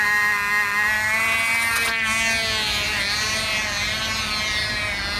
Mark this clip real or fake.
real